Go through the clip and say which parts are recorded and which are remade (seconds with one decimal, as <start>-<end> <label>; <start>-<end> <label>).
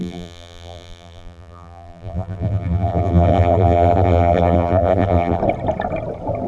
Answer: 0.0-5.4 remade; 5.4-6.5 recorded